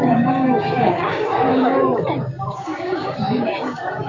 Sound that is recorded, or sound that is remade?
remade